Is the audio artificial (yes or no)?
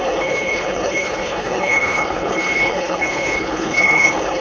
yes